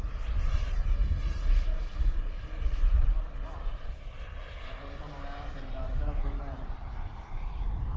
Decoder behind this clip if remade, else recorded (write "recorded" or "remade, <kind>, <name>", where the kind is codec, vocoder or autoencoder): recorded